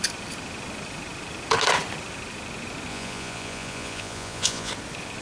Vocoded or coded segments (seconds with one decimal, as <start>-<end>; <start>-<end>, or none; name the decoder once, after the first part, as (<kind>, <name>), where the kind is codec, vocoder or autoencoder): 2.9-4.7 (vocoder, Vocos)